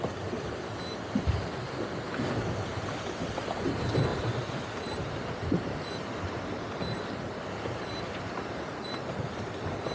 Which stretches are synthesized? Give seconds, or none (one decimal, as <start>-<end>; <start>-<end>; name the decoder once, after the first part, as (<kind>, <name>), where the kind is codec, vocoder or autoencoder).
2.7-3.3 (vocoder, BigVGAN v2); 4.1-9.1